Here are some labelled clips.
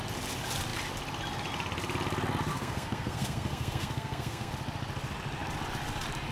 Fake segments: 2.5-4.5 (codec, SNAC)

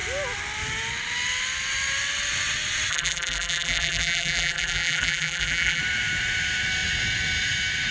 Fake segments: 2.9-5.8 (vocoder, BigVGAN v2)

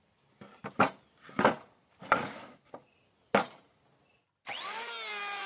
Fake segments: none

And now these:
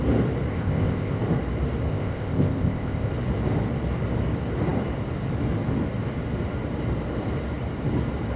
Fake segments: 0.5-1.2 (codec, ZipCodec); 1.9-3.1

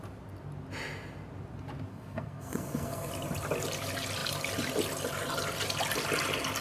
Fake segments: 1.9-3.1 (codec, SNAC)

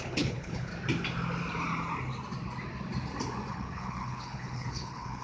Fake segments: 0.0-0.7 (codec, HILCodec); 3.5-5.2